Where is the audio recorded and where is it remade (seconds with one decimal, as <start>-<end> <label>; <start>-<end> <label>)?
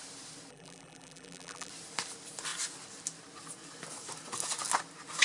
0.0-0.5 recorded; 0.5-1.7 remade; 1.7-5.2 recorded